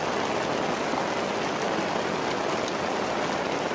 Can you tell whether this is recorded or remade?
recorded